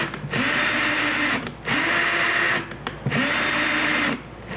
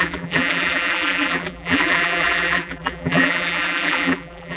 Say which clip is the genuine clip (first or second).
first